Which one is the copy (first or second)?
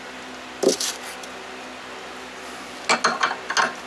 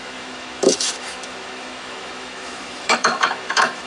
second